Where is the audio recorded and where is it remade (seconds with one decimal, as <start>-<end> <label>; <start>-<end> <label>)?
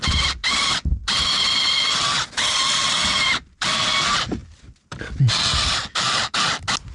0.0-6.9 recorded